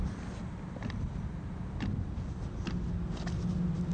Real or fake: real